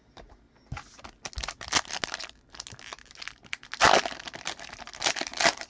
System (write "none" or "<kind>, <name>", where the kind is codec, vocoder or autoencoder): none